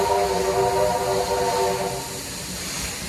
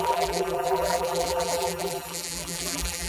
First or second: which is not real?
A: second